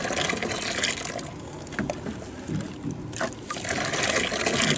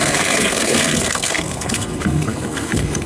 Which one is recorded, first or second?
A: first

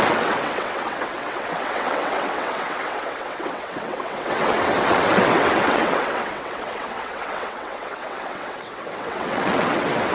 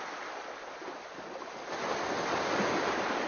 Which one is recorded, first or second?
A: second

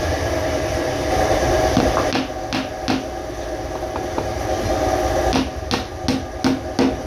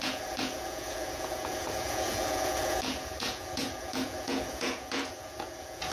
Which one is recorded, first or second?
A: first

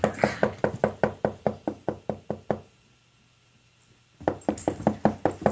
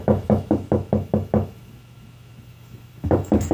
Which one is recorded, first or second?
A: first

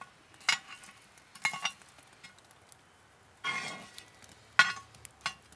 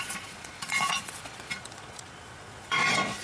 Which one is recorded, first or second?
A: first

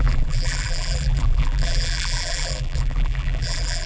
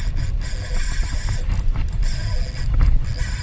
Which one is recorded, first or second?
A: second